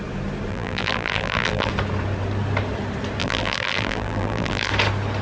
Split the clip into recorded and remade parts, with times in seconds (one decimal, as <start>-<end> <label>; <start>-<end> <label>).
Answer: 0.0-0.5 recorded; 0.5-1.7 remade; 1.7-3.2 recorded; 3.2-4.7 remade; 4.7-5.2 recorded